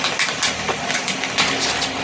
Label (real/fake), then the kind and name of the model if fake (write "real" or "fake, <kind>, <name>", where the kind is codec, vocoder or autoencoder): real